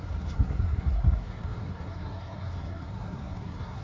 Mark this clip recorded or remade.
remade